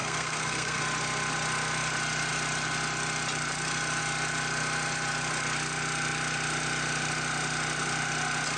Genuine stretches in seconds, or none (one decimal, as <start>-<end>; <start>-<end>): 0.8-8.6